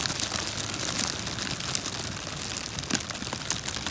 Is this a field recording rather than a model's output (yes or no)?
yes